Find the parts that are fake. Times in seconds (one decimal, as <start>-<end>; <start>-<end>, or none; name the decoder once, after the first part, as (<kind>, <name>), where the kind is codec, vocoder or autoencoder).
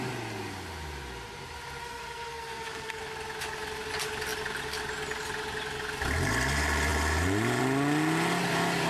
1.8-3.0 (codec, SNAC)